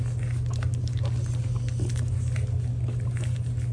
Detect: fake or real real